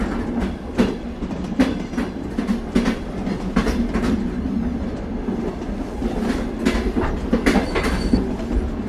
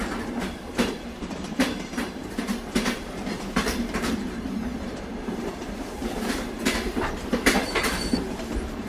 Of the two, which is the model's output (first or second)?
second